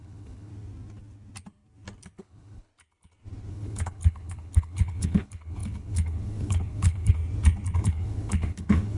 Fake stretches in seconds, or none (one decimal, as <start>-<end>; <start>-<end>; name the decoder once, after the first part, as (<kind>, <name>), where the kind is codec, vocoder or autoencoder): 0.0-0.5 (codec, HILCodec); 2.2-2.7; 3.5-7.2; 7.8-9.0